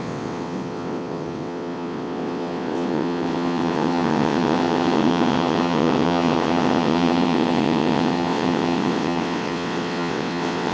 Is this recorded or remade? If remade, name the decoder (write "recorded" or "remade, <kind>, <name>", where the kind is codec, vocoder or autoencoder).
remade, vocoder, WaveNeXt